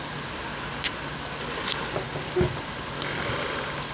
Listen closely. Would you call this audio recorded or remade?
recorded